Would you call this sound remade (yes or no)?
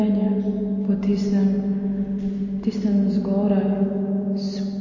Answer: no